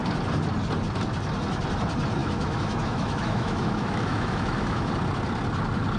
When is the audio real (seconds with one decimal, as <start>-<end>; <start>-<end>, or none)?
0.0-2.2; 4.9-6.0